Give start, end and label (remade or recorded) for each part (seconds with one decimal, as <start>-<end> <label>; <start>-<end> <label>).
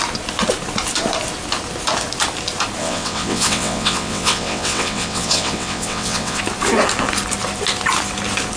0.0-2.8 recorded; 2.8-6.4 remade; 6.4-8.6 recorded